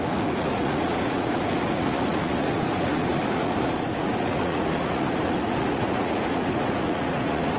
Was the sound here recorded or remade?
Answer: remade